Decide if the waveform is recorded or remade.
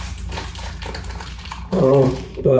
remade